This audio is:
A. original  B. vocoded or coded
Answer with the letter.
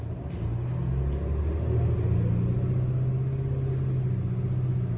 A